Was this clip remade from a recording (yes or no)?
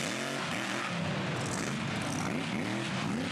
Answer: no